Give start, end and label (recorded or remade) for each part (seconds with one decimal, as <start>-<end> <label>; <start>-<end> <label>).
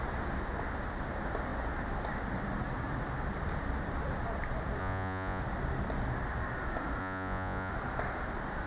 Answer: 0.0-4.8 recorded; 4.8-5.4 remade; 5.4-7.0 recorded; 7.0-7.7 remade; 7.7-8.7 recorded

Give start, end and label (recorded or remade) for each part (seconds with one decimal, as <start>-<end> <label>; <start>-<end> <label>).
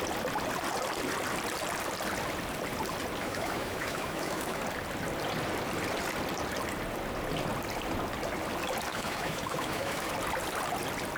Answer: 0.0-3.2 recorded; 3.2-4.6 remade; 4.6-8.9 recorded; 8.9-10.1 remade; 10.1-11.2 recorded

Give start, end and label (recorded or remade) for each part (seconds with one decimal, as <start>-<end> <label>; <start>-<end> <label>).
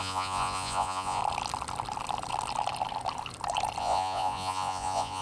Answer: 0.0-1.2 remade; 1.2-3.8 recorded; 3.8-5.2 remade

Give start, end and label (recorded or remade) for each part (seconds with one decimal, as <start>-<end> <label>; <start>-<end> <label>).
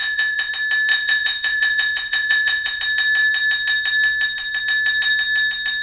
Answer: 0.0-0.5 remade; 0.5-0.9 recorded; 0.9-2.8 remade; 2.8-5.8 recorded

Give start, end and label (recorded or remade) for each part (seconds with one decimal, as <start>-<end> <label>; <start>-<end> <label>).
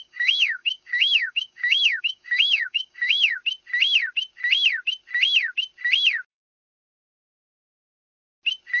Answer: 0.0-3.4 remade; 3.4-6.3 recorded; 6.3-7.1 remade; 7.1-8.8 recorded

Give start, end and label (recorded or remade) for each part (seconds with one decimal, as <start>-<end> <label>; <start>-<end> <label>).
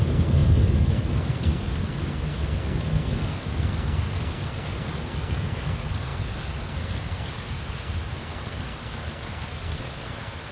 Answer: 0.0-10.5 remade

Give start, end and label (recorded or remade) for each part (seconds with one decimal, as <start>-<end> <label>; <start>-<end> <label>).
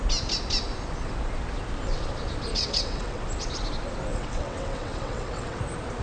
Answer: 0.0-2.5 recorded; 2.5-3.2 remade; 3.2-4.1 recorded; 4.1-5.6 remade; 5.6-6.0 recorded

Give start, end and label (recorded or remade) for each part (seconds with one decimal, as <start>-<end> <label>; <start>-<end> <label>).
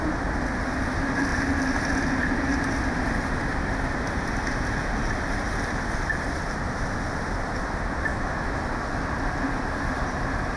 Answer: 0.0-8.1 recorded; 8.1-8.6 remade; 8.6-10.6 recorded